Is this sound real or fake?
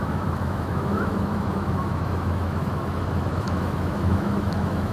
fake